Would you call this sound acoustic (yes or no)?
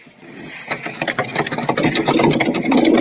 no